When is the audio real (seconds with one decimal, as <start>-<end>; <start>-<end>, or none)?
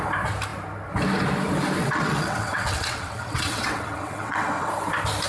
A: 0.0-1.8; 4.7-5.3